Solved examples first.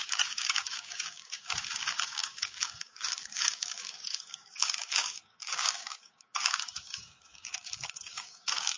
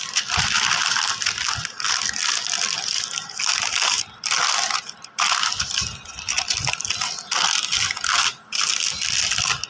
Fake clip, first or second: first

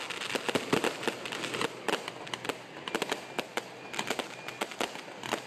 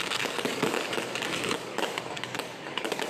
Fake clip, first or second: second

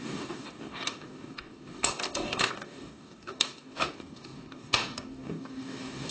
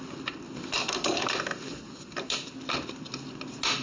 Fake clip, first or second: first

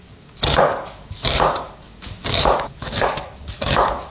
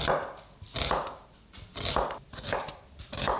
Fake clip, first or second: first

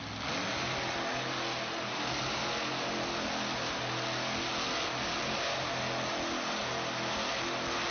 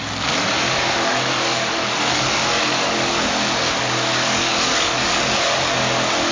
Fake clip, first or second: second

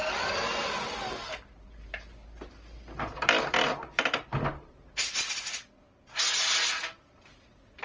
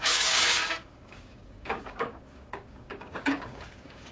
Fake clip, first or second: second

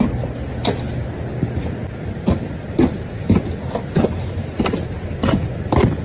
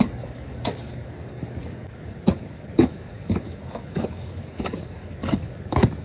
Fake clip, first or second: second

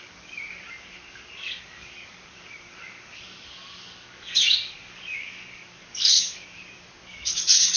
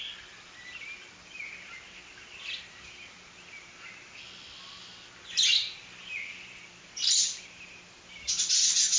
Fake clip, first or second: first